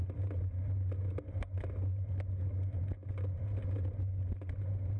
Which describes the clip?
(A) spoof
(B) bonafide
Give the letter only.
B